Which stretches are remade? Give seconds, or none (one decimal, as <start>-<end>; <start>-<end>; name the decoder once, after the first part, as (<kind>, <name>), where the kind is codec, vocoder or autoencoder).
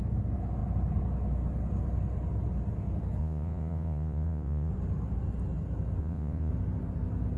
3.2-4.7 (vocoder, Vocos); 6.0-6.5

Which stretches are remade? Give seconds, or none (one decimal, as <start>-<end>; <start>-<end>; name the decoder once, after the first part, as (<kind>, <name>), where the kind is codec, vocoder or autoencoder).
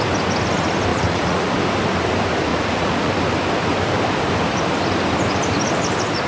0.9-1.5 (vocoder, Vocos); 2.5-3.1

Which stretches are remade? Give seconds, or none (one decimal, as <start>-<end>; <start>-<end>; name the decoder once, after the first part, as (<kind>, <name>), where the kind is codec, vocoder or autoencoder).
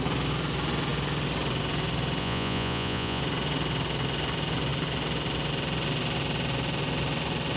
2.2-3.2 (vocoder, Vocos)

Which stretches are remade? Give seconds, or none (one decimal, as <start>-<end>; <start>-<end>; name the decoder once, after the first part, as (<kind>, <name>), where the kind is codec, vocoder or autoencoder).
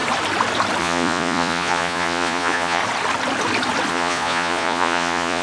0.8-2.8 (vocoder, Vocos); 3.9-5.4